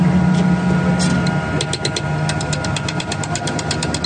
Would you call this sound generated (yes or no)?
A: no